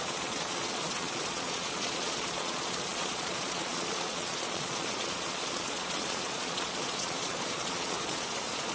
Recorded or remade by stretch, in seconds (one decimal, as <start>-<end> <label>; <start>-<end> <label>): 0.0-8.7 remade